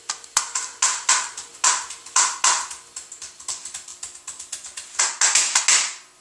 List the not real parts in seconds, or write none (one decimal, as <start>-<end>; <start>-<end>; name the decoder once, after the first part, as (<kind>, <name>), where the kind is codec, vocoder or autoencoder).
none